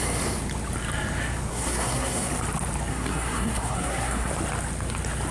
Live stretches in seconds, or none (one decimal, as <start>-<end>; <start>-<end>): 0.0-1.5; 2.3-2.9; 4.3-5.3